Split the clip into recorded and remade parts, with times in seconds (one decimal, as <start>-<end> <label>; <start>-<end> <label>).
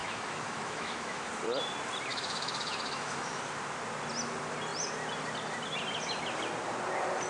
0.0-1.3 remade; 1.3-2.1 recorded; 2.1-3.4 remade; 3.4-7.3 recorded